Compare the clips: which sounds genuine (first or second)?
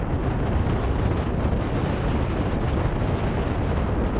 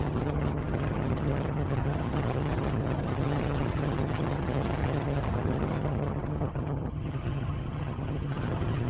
first